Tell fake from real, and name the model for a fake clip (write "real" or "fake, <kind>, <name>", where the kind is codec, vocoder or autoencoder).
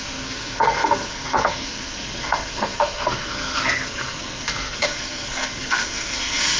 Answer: fake, codec, SNAC